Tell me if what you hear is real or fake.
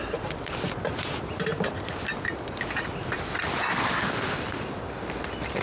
real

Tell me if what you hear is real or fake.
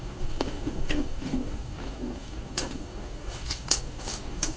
fake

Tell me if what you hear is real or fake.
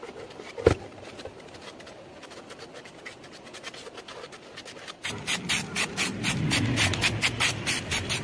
real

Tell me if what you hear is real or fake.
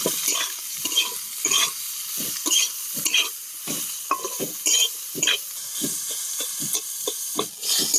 real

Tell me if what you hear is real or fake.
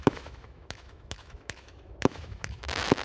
fake